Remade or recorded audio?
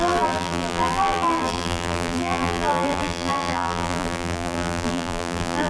remade